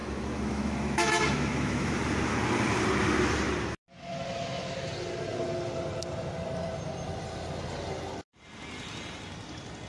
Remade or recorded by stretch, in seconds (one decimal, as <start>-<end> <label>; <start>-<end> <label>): 0.0-1.9 remade; 1.9-9.9 recorded